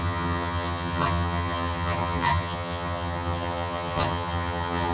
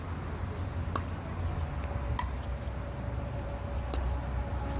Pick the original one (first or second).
second